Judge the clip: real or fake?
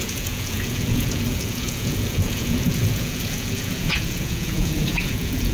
fake